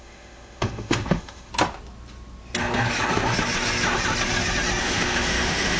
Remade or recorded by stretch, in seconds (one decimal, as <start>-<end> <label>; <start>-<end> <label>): 0.0-1.5 remade; 1.5-4.8 recorded; 4.8-5.8 remade